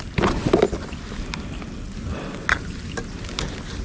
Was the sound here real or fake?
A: real